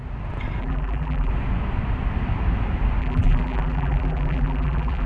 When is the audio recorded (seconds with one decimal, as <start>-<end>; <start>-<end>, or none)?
0.0-0.6; 1.3-3.0